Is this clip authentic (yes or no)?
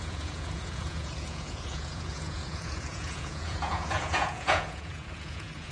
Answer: no